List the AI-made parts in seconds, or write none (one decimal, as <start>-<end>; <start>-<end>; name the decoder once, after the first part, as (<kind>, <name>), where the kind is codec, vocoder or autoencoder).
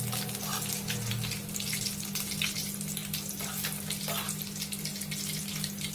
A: none